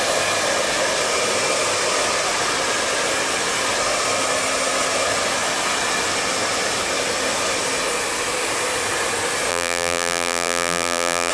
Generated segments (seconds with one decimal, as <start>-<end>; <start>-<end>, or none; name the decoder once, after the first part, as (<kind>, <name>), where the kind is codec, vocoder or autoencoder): 9.5-11.3 (vocoder, BigVGAN v2)